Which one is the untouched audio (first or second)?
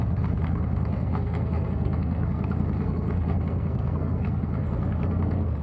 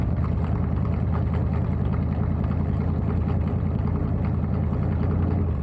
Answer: second